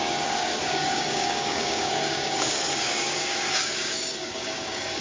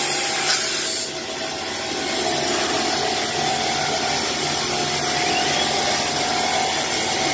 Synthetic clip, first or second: first